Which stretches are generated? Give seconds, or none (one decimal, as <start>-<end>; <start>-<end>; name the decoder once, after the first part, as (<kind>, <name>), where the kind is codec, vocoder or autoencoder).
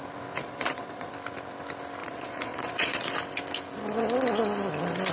0.4-1.1 (vocoder, Vocos); 2.0-3.1